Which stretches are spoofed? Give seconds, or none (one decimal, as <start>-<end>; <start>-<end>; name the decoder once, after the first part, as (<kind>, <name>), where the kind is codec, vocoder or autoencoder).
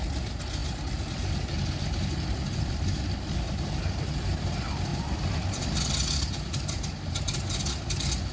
none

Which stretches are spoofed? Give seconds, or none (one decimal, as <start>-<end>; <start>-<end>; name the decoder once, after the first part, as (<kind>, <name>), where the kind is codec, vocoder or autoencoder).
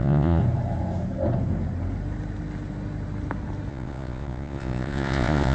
0.0-0.4 (vocoder, Vocos); 3.7-5.5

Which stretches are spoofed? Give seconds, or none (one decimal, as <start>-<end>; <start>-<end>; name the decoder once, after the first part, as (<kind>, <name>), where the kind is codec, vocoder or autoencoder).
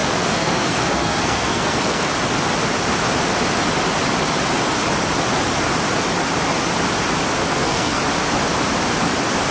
0.0-2.1 (codec, SNAC); 7.4-8.0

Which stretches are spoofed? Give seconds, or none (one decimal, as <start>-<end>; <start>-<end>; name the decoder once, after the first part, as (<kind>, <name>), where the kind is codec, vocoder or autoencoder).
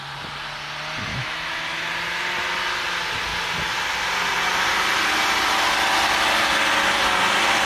1.1-1.8 (autoencoder, DAC-VAE)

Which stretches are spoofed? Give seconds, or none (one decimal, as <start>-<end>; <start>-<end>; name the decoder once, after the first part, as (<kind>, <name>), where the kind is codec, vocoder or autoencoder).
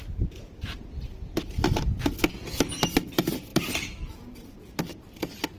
3.5-4.7 (vocoder, BigVGAN v2)